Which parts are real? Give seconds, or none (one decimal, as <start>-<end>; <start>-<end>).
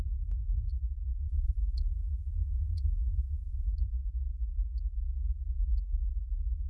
0.0-1.1; 1.6-2.9; 4.3-6.7